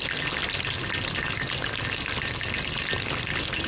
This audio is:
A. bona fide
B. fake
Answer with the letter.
A